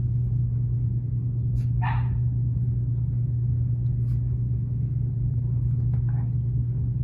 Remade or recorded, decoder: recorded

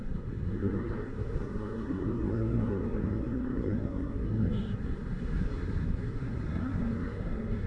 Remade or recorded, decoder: remade, codec, SNAC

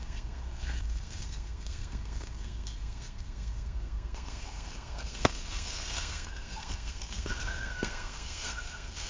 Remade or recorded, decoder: remade, codec, SNAC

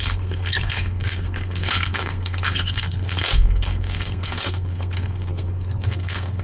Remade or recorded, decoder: remade, codec, SNAC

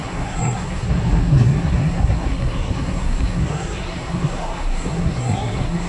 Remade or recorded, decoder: remade, codec, SNAC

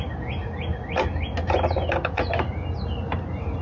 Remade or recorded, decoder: recorded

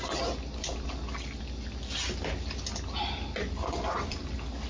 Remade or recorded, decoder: recorded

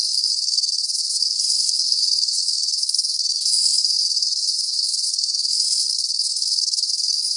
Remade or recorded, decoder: remade, codec, SNAC